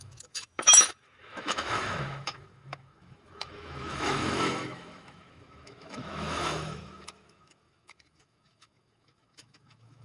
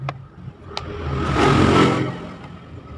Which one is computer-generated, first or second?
first